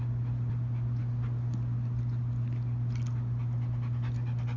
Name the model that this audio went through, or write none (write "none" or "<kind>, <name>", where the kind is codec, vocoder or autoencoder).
none